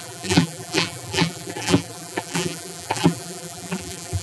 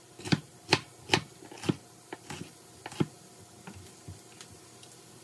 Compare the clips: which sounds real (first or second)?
second